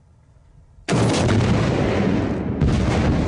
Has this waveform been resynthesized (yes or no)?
no